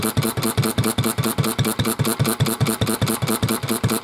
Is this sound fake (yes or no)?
no